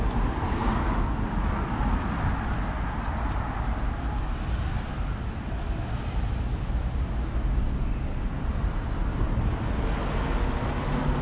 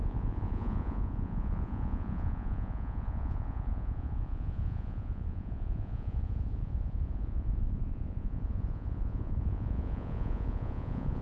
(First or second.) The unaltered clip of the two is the first